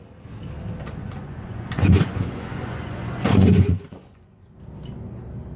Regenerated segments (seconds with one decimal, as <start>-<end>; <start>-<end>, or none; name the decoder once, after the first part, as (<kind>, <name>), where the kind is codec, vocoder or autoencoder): 1.0-4.4 (vocoder, Vocos)